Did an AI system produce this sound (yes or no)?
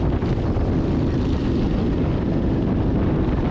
no